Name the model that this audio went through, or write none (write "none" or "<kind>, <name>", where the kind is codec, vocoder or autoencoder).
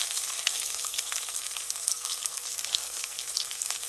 codec, SNAC